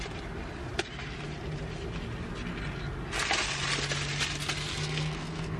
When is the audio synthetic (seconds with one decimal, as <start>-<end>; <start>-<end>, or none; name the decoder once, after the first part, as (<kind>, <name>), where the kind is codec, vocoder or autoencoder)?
4.7-5.6 (codec, SNAC)